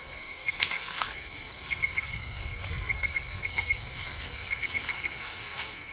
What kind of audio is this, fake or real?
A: fake